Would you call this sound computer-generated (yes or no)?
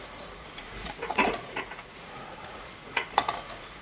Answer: yes